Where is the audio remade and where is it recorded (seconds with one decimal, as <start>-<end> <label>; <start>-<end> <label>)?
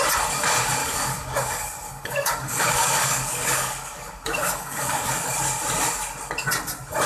0.0-0.8 recorded; 0.8-5.1 remade; 5.1-7.1 recorded